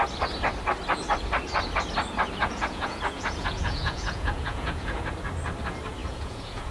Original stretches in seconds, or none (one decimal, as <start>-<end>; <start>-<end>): 0.0-2.4; 5.0-6.0